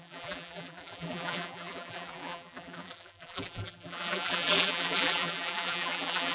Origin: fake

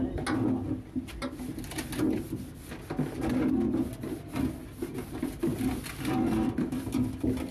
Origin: real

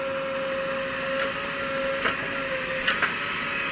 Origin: real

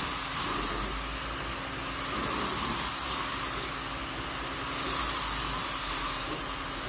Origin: real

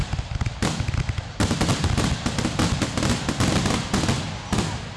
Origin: real